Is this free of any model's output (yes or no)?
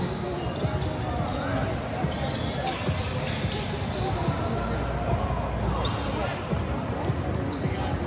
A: yes